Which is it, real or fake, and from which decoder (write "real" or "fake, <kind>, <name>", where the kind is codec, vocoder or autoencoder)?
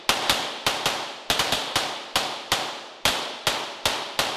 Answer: real